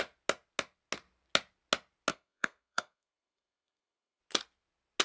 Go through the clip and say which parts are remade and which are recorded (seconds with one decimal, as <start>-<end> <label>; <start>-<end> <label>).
0.0-2.1 recorded; 2.1-4.2 remade; 4.2-5.0 recorded